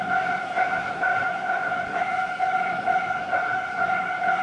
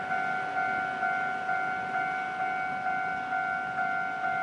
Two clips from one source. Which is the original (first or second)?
second